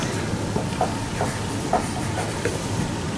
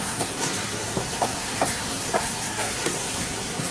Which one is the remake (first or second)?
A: second